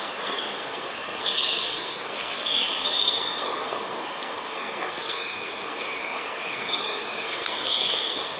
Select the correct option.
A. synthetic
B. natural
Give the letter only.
A